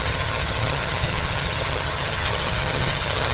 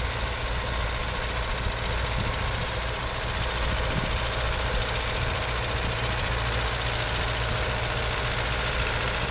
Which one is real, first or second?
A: second